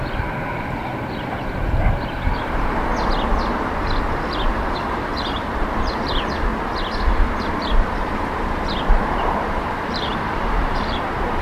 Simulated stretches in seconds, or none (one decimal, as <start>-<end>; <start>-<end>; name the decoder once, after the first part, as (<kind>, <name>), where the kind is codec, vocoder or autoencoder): 0.0-2.9 (vocoder, BigVGAN v2); 4.1-6.5; 7.4-11.4